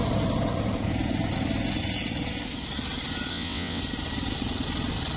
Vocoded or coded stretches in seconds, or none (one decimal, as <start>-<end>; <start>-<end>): 3.3-3.8